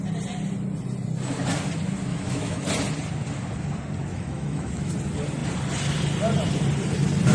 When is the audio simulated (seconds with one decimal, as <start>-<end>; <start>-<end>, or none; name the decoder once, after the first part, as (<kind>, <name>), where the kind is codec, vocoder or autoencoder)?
2.1-2.7 (autoencoder, DAC-VAE); 4.1-4.9